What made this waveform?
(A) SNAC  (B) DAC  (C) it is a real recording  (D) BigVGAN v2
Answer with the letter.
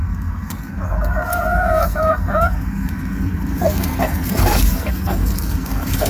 A